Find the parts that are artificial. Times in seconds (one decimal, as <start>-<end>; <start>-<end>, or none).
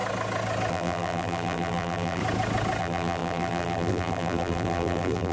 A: 0.7-2.2; 2.8-5.3